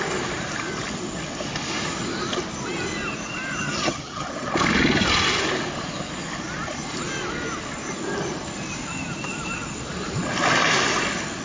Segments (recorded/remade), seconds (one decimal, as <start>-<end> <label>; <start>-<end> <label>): 0.0-3.6 recorded; 3.6-4.3 remade; 4.3-11.4 recorded